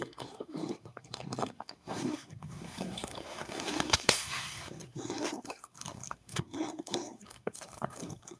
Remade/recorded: remade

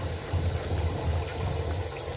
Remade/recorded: recorded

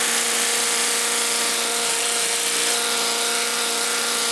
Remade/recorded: recorded